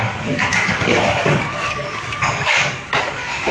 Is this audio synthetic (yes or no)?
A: yes